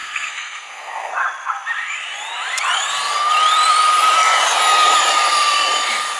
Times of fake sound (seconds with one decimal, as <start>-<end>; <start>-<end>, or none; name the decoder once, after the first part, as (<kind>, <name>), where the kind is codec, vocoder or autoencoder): 0.0-1.1 (codec, SNAC)